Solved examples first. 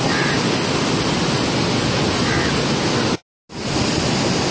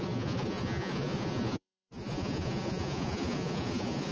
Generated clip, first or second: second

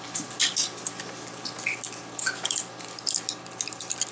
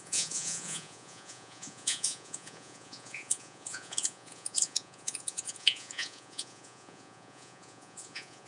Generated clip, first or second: second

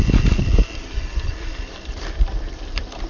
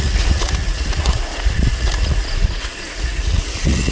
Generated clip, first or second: second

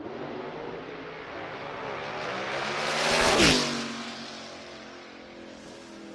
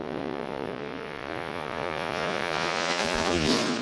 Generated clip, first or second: second